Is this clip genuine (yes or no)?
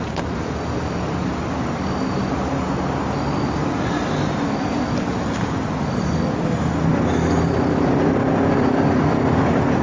yes